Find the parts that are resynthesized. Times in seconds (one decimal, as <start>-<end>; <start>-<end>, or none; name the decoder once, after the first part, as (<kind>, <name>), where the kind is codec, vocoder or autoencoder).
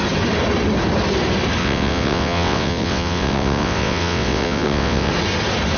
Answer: 1.6-5.1 (vocoder, WaveNeXt)